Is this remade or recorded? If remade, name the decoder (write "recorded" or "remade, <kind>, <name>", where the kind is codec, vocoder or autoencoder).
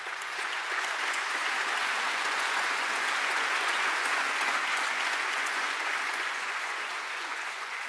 remade, vocoder, Vocos